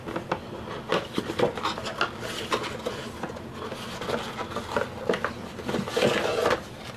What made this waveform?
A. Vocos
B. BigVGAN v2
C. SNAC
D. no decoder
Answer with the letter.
D